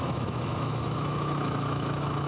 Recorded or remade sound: remade